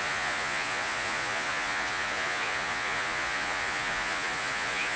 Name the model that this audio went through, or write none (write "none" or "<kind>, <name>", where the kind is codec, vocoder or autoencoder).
vocoder, Vocos